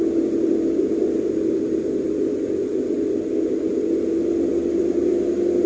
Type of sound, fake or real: real